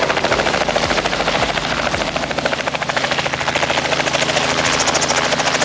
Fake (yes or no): no